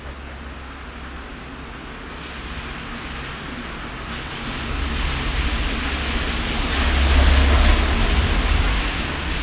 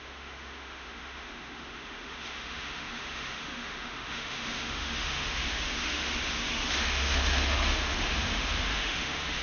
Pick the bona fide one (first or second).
first